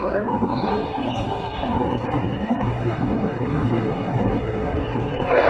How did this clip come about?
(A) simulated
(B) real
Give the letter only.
A